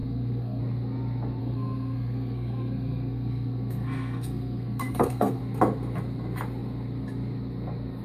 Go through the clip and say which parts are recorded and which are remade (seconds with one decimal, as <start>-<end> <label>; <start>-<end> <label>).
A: 0.0-0.6 remade; 0.6-1.4 recorded; 1.4-5.4 remade; 5.4-8.0 recorded